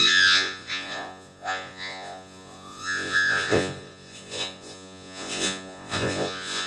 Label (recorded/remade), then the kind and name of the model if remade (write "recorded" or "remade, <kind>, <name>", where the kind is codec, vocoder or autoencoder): remade, vocoder, Vocos